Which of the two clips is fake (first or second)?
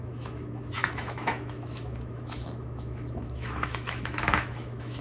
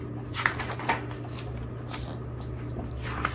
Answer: first